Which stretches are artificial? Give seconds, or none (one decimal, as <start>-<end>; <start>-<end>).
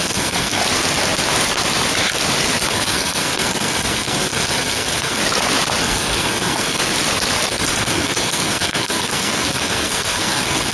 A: 0.0-0.6; 2.7-5.2; 5.8-6.8; 7.5-10.7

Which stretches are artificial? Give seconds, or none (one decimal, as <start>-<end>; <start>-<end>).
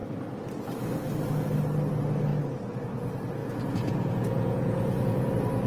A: 3.4-5.3